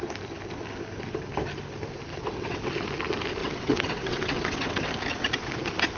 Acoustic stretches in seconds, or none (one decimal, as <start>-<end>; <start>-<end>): 0.0-2.1; 2.7-3.4; 4.9-6.0